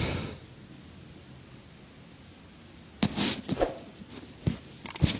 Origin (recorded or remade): recorded